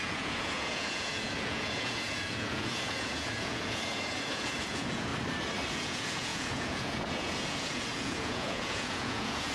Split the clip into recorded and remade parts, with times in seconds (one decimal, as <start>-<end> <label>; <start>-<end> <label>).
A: 0.0-5.1 remade; 5.1-5.7 recorded; 5.7-9.5 remade